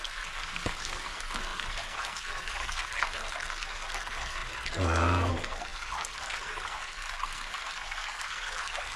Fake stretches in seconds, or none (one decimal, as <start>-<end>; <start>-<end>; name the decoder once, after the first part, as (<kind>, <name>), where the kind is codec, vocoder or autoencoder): 0.0-9.0 (codec, SNAC)